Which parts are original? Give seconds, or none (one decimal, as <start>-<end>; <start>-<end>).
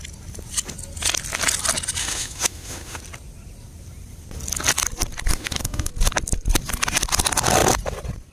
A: 0.0-2.0; 3.0-5.3; 5.9-8.3